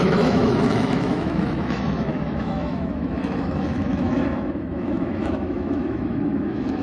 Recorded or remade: remade